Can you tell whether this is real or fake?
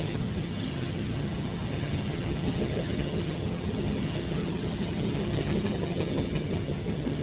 fake